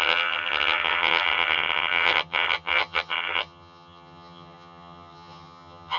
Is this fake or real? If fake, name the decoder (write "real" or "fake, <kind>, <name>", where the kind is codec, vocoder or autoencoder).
fake, vocoder, HiFi-GAN